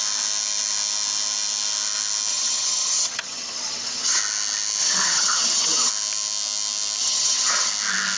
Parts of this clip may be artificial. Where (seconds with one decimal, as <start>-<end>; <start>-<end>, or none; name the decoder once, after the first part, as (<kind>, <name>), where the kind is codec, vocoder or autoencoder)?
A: 2.3-4.2 (vocoder, HiFi-GAN); 4.8-5.9; 7.0-7.7